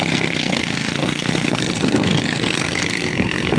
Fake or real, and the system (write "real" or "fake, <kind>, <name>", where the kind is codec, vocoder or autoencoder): fake, codec, SNAC